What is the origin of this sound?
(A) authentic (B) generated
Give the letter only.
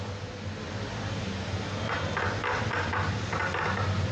A